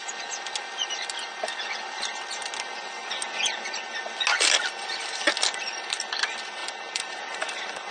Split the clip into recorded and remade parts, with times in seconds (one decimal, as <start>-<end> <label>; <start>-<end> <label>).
0.0-6.6 recorded; 6.6-7.2 remade; 7.2-7.9 recorded